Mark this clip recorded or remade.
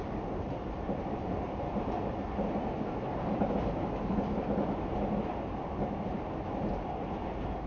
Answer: recorded